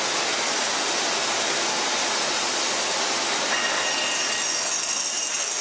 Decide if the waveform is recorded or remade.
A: recorded